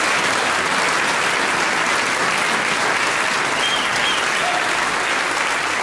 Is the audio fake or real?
real